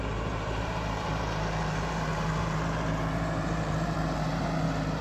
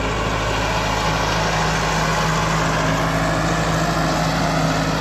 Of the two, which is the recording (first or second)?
second